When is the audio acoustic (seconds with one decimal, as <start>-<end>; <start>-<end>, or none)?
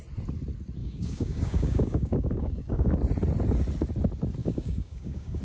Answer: 0.0-0.8; 3.0-4.4